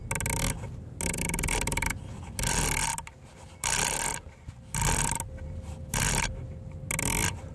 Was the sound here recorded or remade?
recorded